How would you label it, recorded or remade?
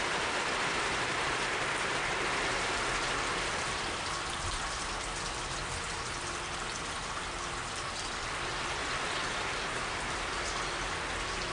recorded